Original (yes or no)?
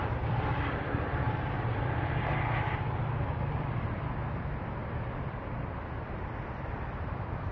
no